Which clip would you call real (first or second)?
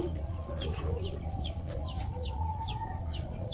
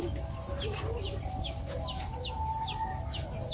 second